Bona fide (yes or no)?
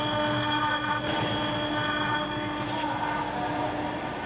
yes